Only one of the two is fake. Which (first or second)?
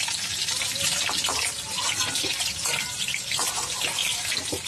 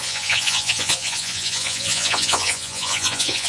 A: second